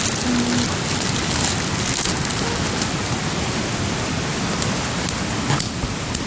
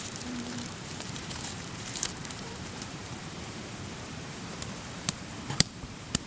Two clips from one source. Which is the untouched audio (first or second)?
first